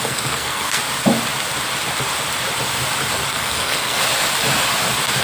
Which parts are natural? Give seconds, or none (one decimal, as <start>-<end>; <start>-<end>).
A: 0.8-3.3; 4.0-5.2